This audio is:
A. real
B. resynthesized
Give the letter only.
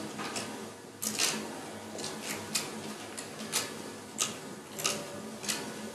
A